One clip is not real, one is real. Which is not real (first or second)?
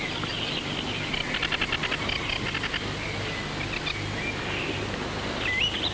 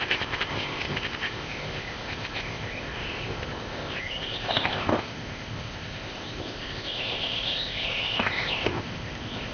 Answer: second